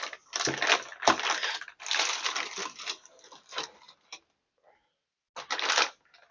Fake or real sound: real